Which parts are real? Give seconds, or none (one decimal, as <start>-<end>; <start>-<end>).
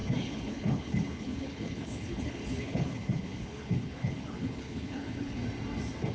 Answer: 5.4-6.1